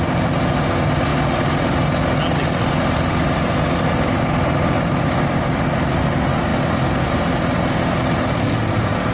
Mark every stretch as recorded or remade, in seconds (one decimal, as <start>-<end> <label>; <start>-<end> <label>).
0.0-9.1 recorded